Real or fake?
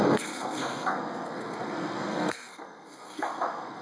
fake